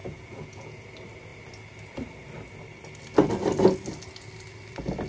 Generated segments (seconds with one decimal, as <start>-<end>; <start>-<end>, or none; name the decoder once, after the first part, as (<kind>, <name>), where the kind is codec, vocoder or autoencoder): 0.0-0.8 (vocoder, Vocos)